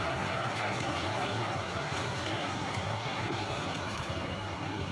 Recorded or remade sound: remade